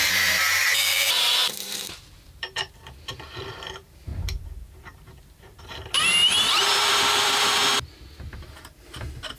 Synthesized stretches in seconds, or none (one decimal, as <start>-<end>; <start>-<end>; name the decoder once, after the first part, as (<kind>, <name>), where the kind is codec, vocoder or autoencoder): 0.0-7.6 (vocoder, BigVGAN v2); 8.3-9.4